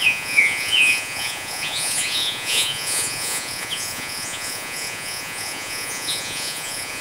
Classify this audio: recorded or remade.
remade